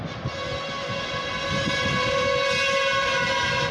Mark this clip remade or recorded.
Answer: recorded